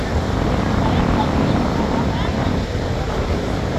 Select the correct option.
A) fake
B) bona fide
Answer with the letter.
B